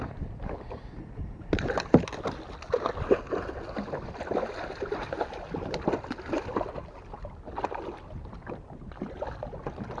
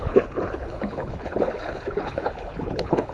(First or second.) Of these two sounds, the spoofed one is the second